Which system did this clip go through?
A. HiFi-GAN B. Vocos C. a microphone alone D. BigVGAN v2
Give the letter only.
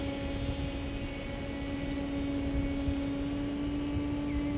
C